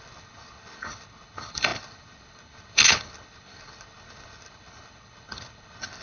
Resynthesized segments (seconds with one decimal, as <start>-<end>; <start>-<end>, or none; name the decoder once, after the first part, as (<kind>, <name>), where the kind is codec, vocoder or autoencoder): 0.0-6.0 (codec, HILCodec)